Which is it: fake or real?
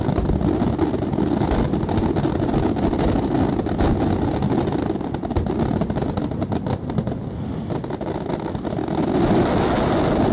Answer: real